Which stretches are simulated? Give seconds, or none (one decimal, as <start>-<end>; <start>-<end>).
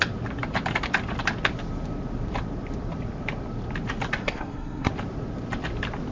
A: 4.2-4.9